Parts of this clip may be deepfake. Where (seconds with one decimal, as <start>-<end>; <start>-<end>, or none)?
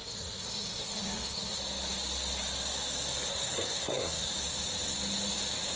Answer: 0.0-1.6; 3.3-4.3